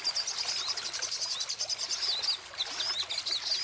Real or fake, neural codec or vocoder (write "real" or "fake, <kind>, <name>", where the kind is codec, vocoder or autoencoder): real